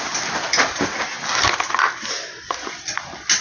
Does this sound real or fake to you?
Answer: real